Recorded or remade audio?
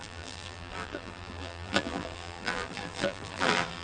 remade